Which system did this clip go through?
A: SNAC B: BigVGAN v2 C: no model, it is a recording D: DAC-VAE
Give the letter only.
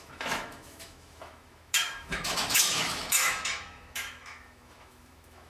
D